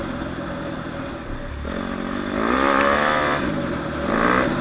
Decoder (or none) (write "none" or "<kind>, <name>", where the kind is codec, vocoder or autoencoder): none